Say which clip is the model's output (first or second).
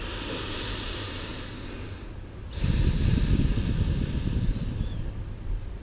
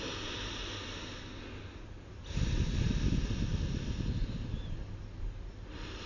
first